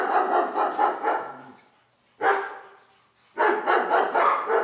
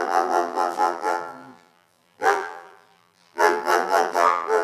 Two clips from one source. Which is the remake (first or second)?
second